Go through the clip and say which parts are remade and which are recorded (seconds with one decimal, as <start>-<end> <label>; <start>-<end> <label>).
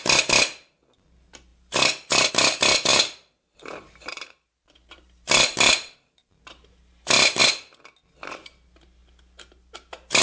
0.0-2.9 recorded; 2.9-7.4 remade; 7.4-10.2 recorded